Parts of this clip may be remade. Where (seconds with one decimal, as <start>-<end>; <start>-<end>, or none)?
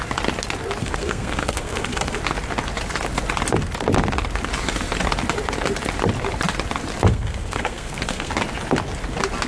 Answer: 0.8-2.2; 7.1-8.3